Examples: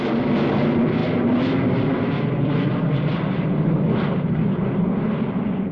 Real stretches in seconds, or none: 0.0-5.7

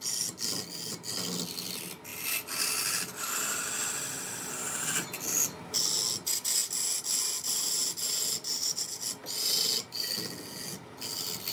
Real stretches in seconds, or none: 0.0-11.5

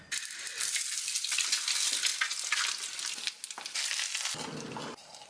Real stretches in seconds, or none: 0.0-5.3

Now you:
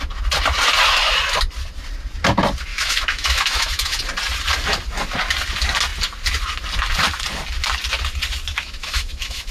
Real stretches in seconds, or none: 0.0-2.7; 4.0-8.5

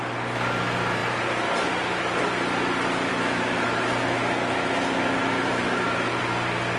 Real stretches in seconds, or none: 0.0-3.1; 6.2-6.8